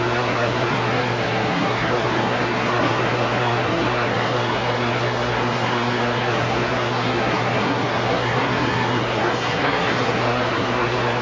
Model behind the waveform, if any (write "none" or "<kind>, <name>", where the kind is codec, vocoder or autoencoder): codec, SNAC